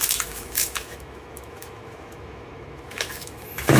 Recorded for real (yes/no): no